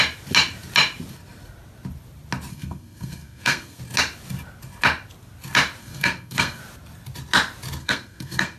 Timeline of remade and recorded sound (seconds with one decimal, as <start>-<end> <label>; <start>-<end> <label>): 0.0-2.5 recorded; 2.5-3.8 remade; 3.8-5.8 recorded; 5.8-6.6 remade; 6.6-7.8 recorded; 7.8-8.6 remade